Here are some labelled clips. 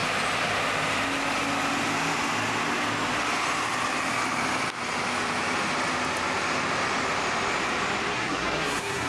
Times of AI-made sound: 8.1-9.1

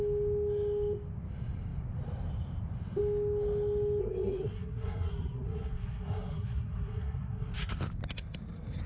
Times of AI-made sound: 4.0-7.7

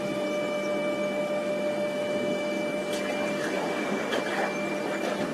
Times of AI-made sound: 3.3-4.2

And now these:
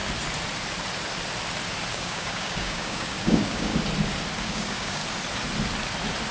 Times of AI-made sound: 1.9-3.7; 4.4-5.0

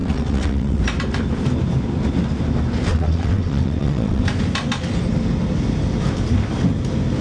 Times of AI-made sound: 0.0-0.8; 2.9-4.2

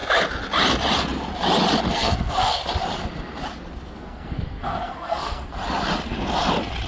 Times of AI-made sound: 1.9-2.6; 3.9-5.5

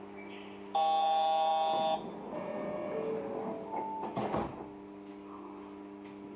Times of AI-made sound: none